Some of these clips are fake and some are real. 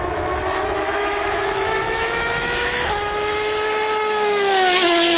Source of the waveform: fake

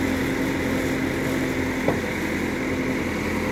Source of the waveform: real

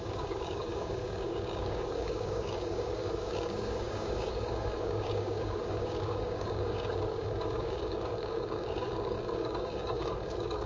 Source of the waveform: fake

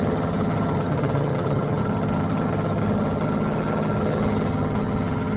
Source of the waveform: fake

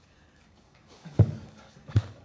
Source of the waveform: fake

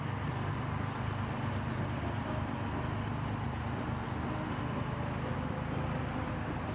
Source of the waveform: real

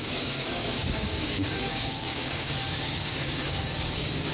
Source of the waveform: fake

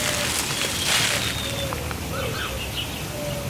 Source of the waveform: real